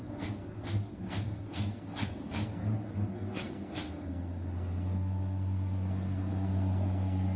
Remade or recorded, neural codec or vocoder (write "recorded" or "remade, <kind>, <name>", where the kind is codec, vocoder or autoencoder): remade, codec, SNAC